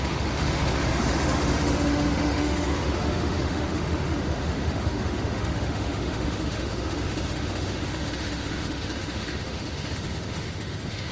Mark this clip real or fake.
fake